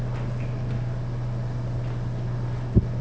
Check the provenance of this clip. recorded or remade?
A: recorded